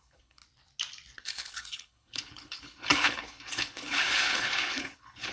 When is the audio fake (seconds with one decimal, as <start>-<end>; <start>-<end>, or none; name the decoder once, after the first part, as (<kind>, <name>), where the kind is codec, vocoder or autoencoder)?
0.0-0.4 (codec, HILCodec); 1.2-5.3